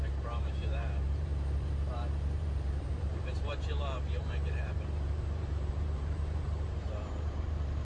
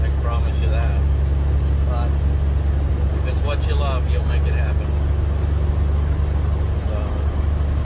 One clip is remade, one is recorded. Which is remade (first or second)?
first